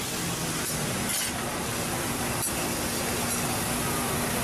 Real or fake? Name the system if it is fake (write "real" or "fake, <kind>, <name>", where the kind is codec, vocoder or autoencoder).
real